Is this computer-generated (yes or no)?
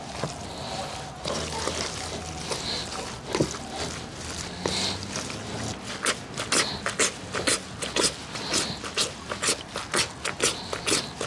no